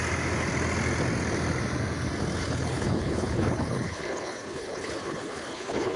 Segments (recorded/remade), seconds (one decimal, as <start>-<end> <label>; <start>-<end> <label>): 0.0-2.4 recorded; 2.4-6.0 remade